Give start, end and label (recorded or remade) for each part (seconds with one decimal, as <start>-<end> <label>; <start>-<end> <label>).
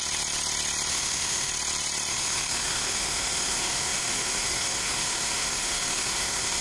0.0-0.9 recorded; 0.9-1.5 remade; 1.5-2.1 recorded; 2.1-6.6 remade